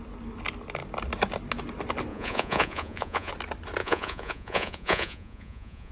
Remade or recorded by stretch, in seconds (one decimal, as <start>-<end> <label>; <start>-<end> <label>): 0.0-2.1 recorded; 2.1-3.3 remade; 3.3-3.8 recorded; 3.8-5.9 remade